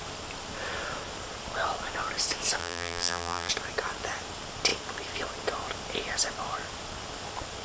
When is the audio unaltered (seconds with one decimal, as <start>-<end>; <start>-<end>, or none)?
0.0-2.6; 3.5-7.6